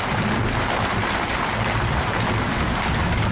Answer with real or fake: real